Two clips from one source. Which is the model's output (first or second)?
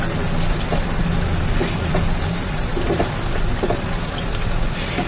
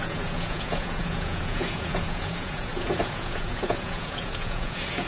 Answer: second